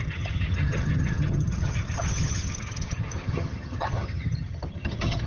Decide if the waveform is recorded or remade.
remade